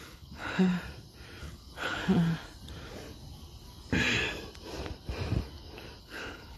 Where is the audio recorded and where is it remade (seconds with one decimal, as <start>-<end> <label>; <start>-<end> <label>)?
0.0-0.7 remade; 0.7-1.4 recorded; 1.4-2.0 remade; 2.0-6.0 recorded; 6.0-6.6 remade